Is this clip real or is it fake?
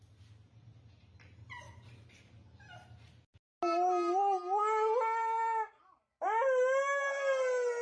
real